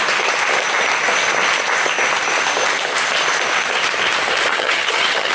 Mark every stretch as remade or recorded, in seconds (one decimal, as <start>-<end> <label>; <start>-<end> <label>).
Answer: 0.0-4.5 recorded; 4.5-5.3 remade